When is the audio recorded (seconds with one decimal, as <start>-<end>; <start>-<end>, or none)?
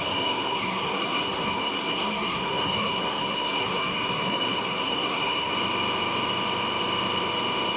5.5-7.8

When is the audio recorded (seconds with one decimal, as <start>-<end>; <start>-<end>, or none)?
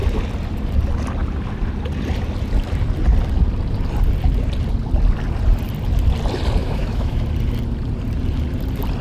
0.0-6.6; 7.2-9.0